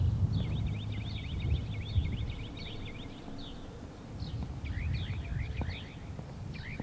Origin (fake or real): real